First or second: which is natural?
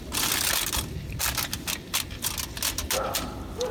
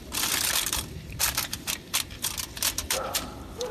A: first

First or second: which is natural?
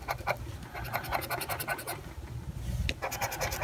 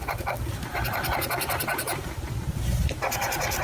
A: first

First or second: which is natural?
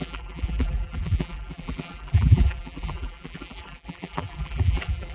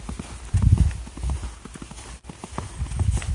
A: second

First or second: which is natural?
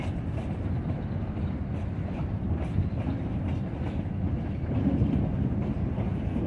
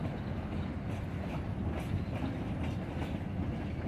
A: second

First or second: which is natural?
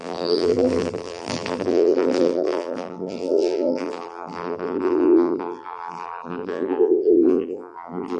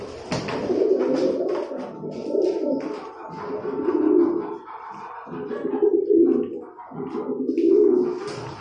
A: second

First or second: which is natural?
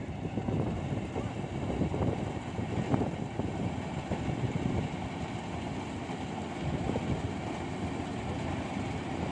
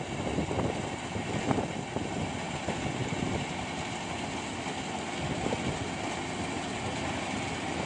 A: second